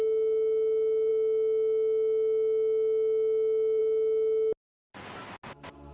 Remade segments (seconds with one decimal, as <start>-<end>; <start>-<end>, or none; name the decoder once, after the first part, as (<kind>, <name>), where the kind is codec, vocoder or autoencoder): none